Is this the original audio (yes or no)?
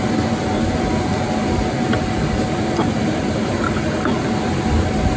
yes